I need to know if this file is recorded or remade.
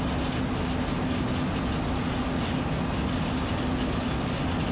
recorded